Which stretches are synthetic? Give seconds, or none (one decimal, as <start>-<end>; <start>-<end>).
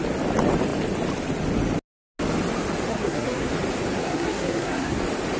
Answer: 2.9-3.5; 4.0-5.0